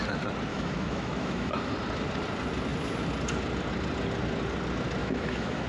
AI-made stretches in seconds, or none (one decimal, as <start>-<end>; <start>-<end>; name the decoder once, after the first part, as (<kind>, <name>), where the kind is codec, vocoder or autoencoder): 0.5-1.5 (autoencoder, DAC-VAE); 5.0-5.7